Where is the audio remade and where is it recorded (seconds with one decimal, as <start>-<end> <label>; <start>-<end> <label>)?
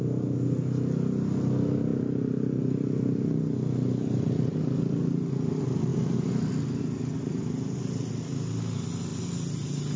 0.0-10.0 recorded